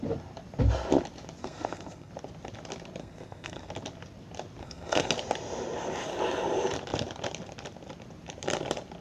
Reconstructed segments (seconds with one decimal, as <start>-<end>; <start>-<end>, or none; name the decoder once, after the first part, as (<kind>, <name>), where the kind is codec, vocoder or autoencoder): 1.4-2.1 (codec, SNAC); 3.0-3.7; 4.6-5.1